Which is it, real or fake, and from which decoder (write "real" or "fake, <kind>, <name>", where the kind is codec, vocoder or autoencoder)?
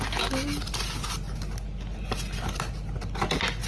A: real